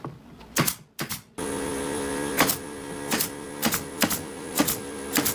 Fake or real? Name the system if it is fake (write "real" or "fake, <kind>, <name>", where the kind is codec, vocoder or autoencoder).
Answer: real